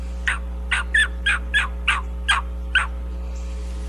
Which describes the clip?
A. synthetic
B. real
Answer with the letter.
B